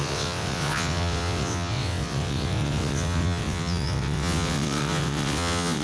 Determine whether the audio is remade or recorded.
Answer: remade